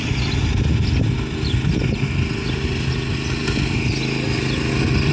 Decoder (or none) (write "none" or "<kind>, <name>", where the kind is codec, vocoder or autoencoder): none